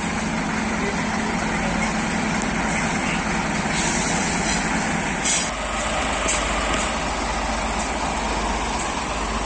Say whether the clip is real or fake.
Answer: real